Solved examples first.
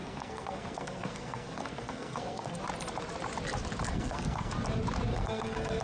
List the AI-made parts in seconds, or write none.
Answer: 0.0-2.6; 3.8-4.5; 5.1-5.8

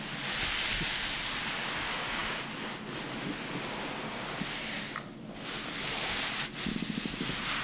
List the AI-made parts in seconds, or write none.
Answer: none

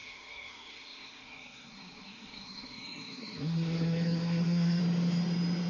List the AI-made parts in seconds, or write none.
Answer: 0.0-4.8

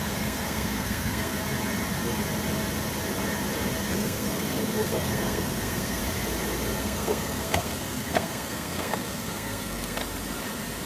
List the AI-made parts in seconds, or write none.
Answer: 0.0-1.3; 3.9-6.0; 6.8-10.0

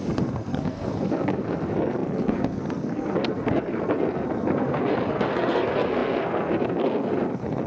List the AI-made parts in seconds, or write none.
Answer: 0.0-7.7

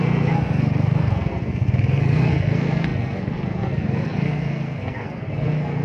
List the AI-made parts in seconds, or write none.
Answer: 0.0-5.8

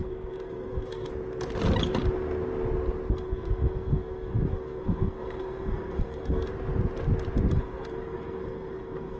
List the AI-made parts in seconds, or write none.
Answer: 0.0-1.1; 3.1-6.5; 7.5-9.2

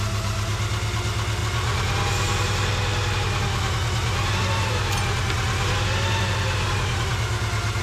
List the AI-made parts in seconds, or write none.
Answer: none